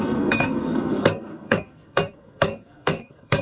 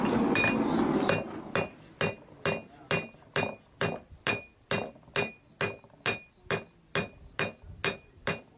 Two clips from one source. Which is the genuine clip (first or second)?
second